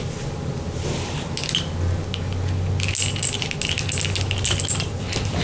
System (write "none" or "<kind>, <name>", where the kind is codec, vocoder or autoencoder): none